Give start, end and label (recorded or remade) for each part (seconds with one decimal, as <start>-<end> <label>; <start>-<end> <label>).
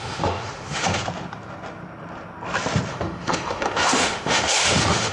0.0-1.0 remade; 1.0-2.9 recorded; 2.9-5.1 remade